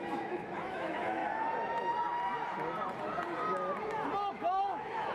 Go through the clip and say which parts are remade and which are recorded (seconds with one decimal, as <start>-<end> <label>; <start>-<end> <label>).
0.0-1.2 remade; 1.2-4.3 recorded; 4.3-5.1 remade